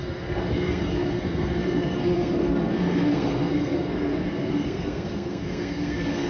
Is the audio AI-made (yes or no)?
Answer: yes